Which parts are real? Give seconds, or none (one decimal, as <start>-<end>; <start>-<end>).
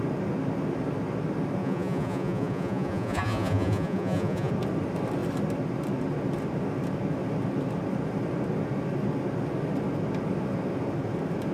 0.0-1.6; 4.5-11.5